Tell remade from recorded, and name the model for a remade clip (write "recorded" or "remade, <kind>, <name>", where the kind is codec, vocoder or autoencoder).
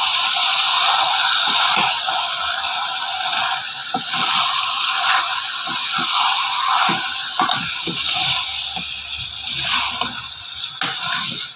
recorded